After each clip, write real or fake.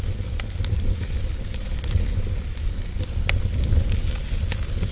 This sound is real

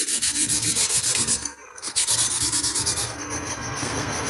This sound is fake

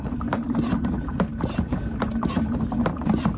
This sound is fake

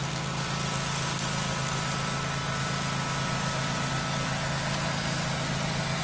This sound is real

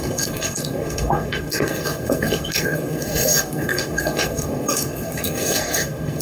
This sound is fake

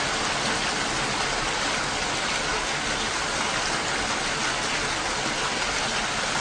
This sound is real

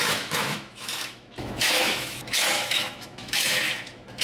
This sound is fake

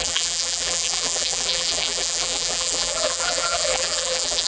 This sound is fake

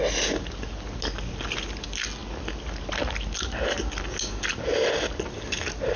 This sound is real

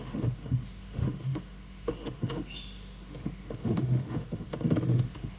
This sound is fake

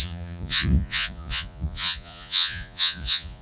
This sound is fake